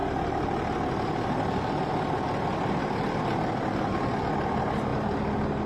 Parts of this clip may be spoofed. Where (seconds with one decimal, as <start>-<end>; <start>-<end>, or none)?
none